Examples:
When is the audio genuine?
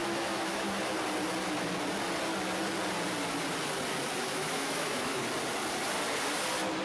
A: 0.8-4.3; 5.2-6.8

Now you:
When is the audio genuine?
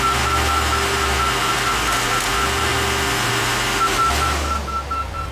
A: 0.0-5.3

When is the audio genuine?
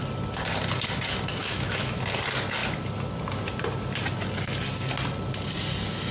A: 0.0-1.4; 2.0-6.1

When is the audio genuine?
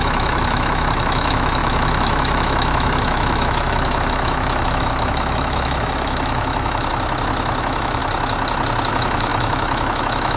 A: 6.9-7.6; 8.0-8.9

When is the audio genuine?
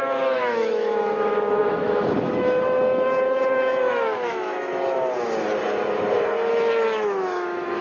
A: 4.7-6.5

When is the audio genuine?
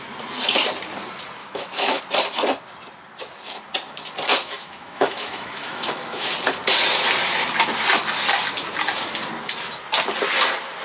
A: 0.0-1.4; 2.0-4.3; 6.3-10.8